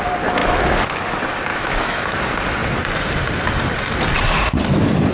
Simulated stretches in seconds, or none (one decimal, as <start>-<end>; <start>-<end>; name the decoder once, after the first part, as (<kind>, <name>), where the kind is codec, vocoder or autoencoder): 0.4-1.0 (autoencoder, DAC-VAE); 1.5-2.2